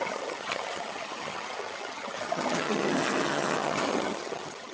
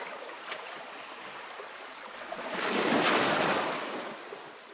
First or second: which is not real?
first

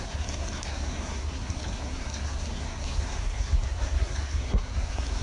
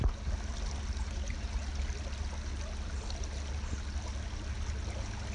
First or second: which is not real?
first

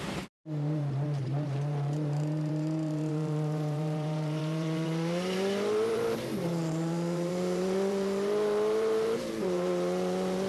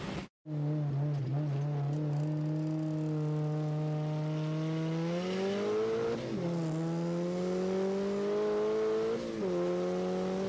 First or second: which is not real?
first